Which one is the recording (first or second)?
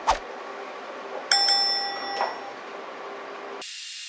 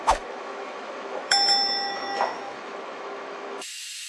first